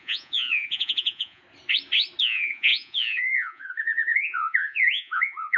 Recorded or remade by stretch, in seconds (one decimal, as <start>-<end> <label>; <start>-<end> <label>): 0.0-1.4 remade; 1.4-2.2 recorded; 2.2-5.6 remade